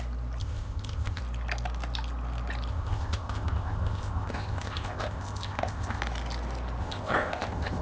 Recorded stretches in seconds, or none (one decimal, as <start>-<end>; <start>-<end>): 0.0-0.4; 1.2-2.7; 6.0-6.8